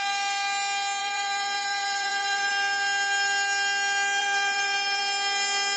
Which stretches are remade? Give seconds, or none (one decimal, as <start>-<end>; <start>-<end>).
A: 1.0-2.5; 4.2-5.0